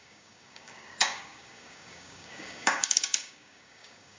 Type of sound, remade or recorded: remade